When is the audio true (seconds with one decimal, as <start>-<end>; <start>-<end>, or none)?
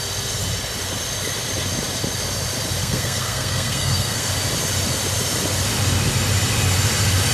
0.0-2.8; 4.3-7.3